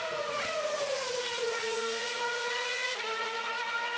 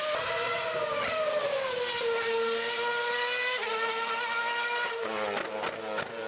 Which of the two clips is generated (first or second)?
first